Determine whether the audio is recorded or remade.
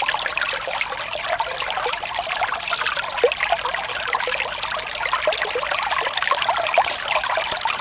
recorded